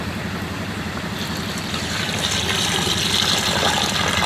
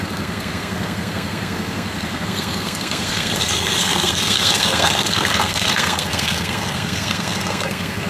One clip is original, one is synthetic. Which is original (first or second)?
first